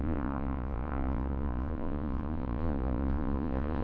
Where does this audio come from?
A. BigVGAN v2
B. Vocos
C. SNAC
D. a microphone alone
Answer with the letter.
B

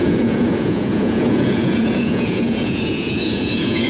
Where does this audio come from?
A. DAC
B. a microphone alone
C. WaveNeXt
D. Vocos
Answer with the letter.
D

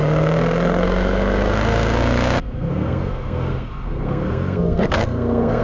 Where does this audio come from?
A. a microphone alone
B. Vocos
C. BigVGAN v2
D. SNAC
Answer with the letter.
D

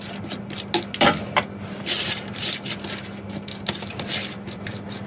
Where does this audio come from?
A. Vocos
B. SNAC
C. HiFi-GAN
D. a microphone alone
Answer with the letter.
D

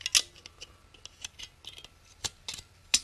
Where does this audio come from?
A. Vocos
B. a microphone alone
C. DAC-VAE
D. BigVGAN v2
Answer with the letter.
B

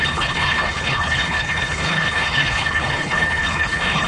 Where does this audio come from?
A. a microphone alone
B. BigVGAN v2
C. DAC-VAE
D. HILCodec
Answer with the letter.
D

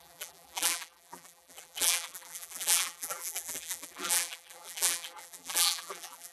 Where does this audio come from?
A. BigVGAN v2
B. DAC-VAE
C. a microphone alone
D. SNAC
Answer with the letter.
A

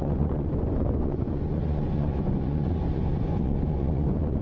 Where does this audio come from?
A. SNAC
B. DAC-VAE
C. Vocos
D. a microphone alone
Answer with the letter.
C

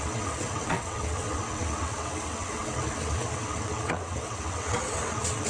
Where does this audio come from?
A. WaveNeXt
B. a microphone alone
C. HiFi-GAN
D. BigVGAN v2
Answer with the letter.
A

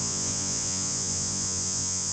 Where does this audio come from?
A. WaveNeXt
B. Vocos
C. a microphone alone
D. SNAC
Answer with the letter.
B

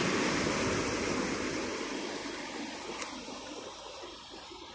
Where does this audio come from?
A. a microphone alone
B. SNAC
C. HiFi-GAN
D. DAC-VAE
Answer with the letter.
A